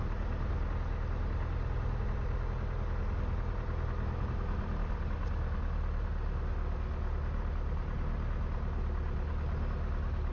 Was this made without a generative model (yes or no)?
yes